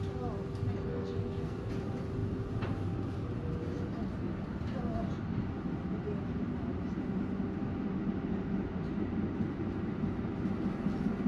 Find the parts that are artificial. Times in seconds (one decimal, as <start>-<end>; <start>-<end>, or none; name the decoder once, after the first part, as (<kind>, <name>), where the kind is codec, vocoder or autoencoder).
0.9-1.7 (codec, SNAC)

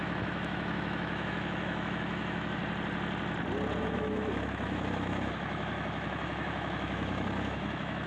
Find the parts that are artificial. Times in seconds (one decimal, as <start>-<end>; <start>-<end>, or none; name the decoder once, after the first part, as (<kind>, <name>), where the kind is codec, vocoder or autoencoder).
0.0-2.6 (autoencoder, DAC-VAE); 3.8-8.1

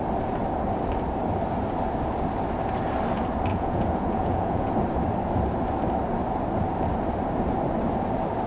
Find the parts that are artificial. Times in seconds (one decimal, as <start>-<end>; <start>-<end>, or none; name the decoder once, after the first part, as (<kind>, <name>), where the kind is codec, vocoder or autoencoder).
3.5-4.7 (vocoder, Vocos)

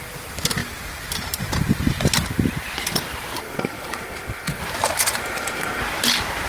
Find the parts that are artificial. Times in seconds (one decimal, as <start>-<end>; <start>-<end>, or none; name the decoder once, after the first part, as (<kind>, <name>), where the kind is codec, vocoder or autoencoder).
3.4-4.6 (codec, SNAC); 5.2-5.8

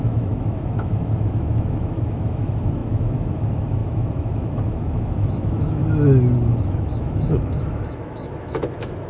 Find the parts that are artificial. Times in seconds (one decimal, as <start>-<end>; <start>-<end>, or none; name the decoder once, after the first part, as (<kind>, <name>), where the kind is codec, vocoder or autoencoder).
0.0-5.8 (autoencoder, DAC-VAE); 6.6-9.1

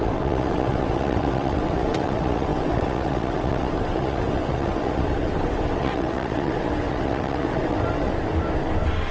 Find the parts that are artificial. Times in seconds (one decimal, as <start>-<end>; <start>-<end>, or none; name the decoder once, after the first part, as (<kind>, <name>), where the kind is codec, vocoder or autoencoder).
0.0-8.1 (vocoder, WaveNeXt)

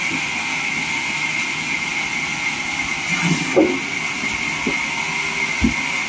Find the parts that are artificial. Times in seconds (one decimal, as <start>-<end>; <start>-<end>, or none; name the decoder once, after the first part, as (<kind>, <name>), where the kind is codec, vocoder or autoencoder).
none